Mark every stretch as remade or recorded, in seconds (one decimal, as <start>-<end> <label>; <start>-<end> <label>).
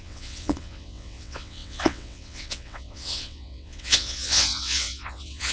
0.0-5.5 remade